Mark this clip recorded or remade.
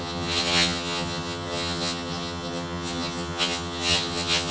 remade